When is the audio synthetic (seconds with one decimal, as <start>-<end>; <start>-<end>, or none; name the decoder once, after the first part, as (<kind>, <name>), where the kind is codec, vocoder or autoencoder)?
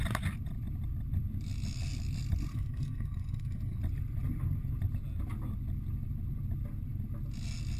2.5-3.8 (codec, SNAC)